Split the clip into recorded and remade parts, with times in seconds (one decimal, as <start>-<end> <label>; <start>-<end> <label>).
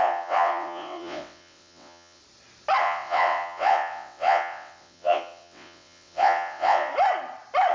0.0-2.2 remade; 2.2-2.8 recorded; 2.8-6.9 remade; 6.9-7.7 recorded